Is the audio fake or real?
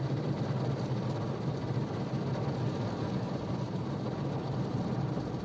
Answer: real